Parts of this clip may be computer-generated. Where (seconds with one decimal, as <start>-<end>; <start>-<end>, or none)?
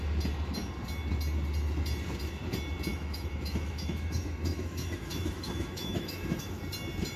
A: 2.9-6.6